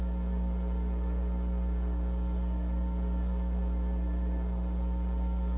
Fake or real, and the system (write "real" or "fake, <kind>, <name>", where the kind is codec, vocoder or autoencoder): fake, codec, SNAC